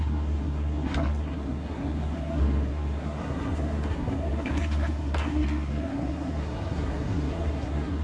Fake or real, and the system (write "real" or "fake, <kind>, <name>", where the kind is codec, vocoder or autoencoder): fake, codec, SNAC